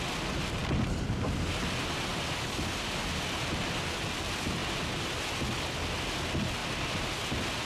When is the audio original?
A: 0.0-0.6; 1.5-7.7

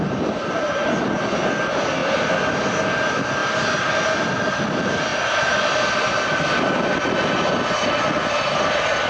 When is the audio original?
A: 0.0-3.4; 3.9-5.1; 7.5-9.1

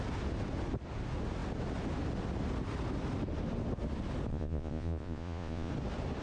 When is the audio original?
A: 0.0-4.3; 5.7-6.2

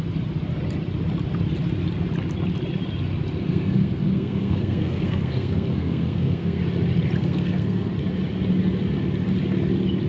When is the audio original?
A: 0.0-3.5; 6.6-7.2; 7.9-10.1